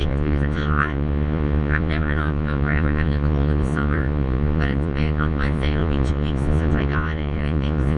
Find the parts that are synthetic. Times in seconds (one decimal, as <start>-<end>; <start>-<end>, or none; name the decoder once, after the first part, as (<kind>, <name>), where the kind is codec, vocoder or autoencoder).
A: 0.0-8.0 (vocoder, Vocos)